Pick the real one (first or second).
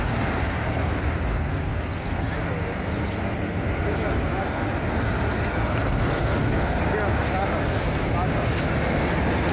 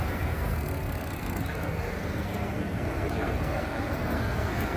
first